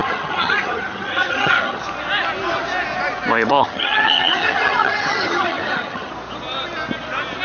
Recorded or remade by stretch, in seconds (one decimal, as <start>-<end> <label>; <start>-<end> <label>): 0.0-1.8 remade; 1.8-3.5 recorded; 3.5-6.1 remade; 6.1-7.4 recorded

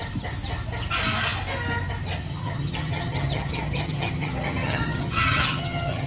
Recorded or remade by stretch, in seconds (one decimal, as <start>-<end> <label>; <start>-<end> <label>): 0.0-2.3 recorded; 2.3-6.1 remade